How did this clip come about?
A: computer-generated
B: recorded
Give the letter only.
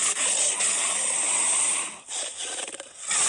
B